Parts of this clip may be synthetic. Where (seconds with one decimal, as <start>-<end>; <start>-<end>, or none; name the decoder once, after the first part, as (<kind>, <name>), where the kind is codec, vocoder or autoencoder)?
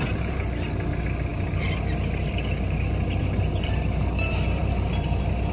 none